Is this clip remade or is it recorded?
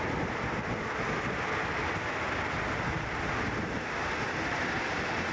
recorded